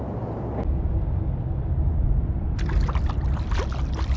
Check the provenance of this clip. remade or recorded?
recorded